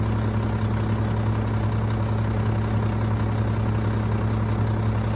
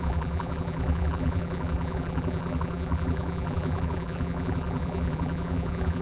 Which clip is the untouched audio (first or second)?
first